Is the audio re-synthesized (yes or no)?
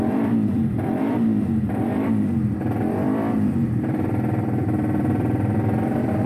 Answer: yes